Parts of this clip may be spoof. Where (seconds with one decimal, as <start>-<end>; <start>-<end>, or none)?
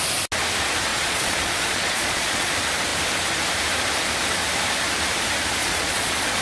0.9-2.5; 5.6-6.4